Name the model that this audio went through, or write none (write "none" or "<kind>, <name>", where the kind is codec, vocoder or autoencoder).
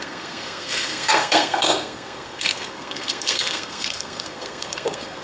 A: codec, SNAC